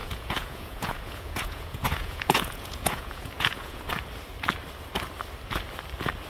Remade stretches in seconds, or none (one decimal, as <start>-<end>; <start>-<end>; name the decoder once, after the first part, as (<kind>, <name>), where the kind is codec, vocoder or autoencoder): 0.0-3.8 (vocoder, Vocos)